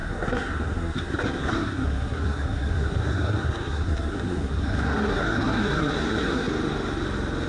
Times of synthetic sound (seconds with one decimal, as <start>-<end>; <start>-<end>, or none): 0.0-6.5

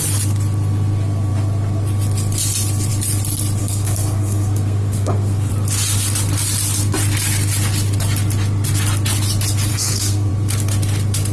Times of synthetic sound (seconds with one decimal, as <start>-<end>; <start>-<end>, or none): 3.6-5.5; 9.7-10.3